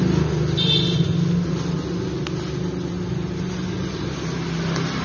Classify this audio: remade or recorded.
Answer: recorded